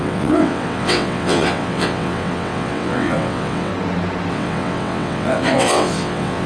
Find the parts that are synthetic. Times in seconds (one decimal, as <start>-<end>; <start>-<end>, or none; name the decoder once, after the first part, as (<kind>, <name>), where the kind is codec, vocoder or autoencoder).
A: 0.0-3.7 (vocoder, WaveNeXt); 4.3-6.5